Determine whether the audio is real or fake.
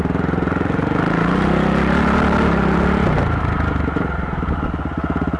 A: real